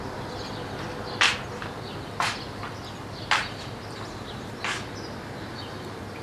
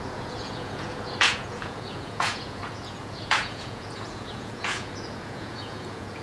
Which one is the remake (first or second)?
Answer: second